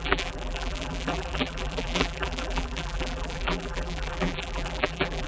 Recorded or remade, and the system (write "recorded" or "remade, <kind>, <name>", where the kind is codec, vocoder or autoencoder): remade, vocoder, BigVGAN v2